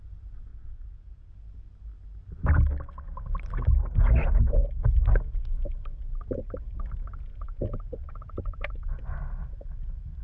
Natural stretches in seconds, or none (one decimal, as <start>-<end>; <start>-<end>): 0.0-0.5; 1.3-5.0; 5.7-7.3; 9.0-10.2